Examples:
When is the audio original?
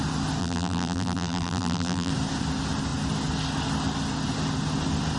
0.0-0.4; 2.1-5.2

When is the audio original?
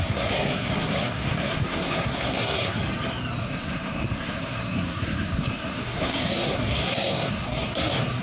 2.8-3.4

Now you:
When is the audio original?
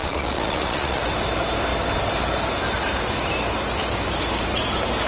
1.0-5.1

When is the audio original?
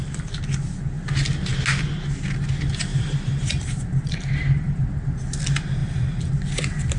0.0-2.9; 4.8-5.8; 6.3-7.0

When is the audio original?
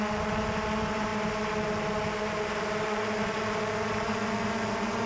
0.0-5.1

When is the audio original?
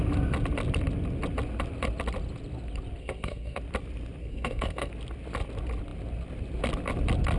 0.0-3.0; 3.6-4.2; 4.9-7.4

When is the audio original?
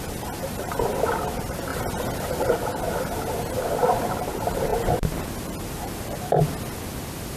0.0-1.7; 2.5-4.7; 6.2-7.4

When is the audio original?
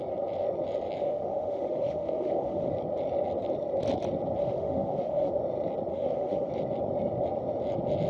0.0-1.0; 2.7-4.4; 5.3-5.9; 6.5-8.1